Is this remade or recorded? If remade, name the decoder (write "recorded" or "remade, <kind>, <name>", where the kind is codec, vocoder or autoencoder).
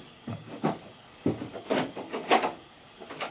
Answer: remade, codec, DAC